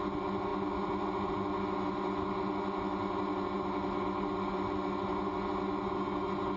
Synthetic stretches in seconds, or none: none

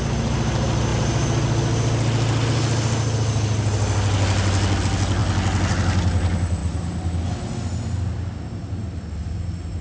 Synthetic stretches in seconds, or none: 6.6-7.3 (vocoder, BigVGAN v2)

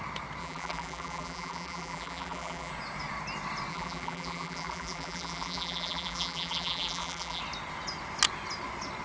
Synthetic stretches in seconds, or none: 0.4-2.7 (vocoder, BigVGAN v2); 3.7-7.4

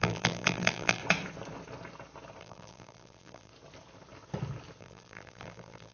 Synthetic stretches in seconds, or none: 0.0-1.0 (vocoder, BigVGAN v2); 2.4-3.5; 4.8-5.9

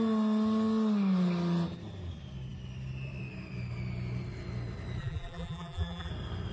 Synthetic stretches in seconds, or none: 5.0-6.1 (vocoder, BigVGAN v2)

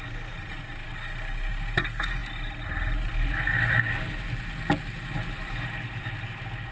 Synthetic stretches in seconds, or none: none